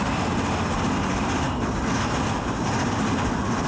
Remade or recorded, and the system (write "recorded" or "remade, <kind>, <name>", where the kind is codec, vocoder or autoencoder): recorded